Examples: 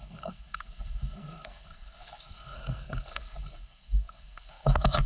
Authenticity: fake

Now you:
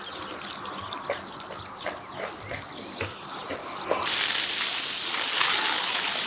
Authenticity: fake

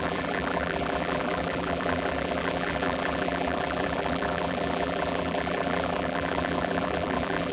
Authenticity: fake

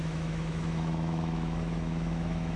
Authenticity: fake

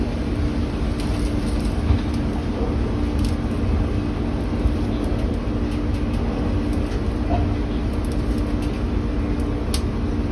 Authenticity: real